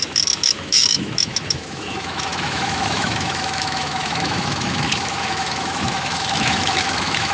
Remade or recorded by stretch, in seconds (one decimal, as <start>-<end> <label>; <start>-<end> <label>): 0.0-7.3 remade